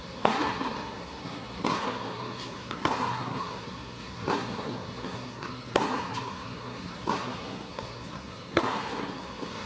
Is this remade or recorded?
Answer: remade